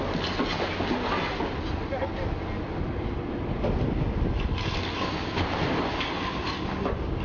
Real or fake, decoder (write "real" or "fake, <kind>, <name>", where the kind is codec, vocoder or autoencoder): real